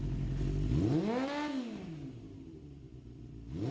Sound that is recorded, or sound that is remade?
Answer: recorded